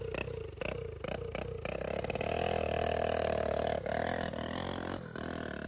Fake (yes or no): no